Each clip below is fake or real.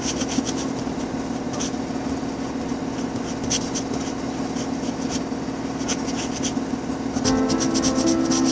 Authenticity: real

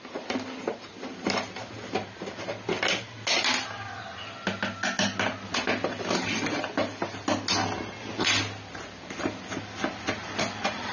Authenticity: real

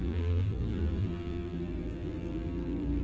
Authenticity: fake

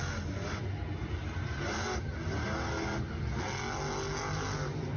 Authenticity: real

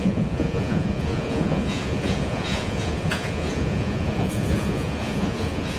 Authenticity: fake